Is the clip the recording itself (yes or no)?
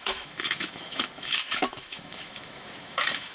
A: no